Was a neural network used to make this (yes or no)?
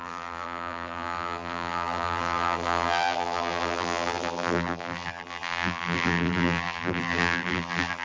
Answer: yes